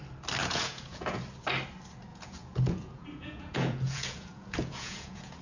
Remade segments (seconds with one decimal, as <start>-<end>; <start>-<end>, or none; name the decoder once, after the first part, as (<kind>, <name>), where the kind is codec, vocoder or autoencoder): 0.4-1.2 (vocoder, Vocos); 2.1-5.4